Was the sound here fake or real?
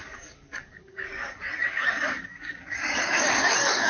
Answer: fake